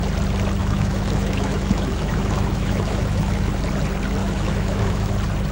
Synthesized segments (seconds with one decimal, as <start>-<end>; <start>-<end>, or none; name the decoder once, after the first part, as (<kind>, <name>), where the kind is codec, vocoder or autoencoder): 0.6-3.5 (autoencoder, DAC-VAE); 4.2-5.1